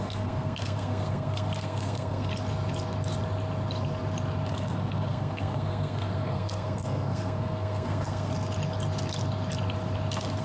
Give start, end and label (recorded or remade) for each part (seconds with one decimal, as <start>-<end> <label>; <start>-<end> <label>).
0.0-2.3 remade; 2.3-4.5 recorded; 4.5-8.3 remade; 8.3-10.4 recorded